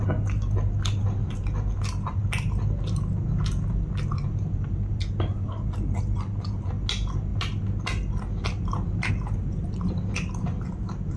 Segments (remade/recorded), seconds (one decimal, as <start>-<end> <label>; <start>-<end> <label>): 0.0-11.2 recorded